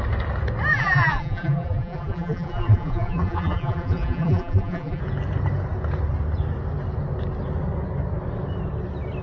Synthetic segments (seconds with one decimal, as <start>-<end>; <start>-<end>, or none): 0.7-5.0